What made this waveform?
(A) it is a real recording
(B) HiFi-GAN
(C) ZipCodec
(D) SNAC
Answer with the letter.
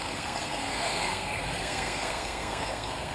D